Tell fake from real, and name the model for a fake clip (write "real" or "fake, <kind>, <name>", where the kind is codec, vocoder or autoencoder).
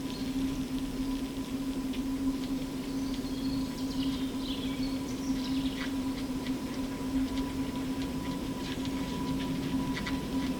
real